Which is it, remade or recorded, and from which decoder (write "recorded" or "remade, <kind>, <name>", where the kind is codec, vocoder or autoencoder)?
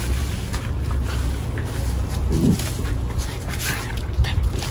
recorded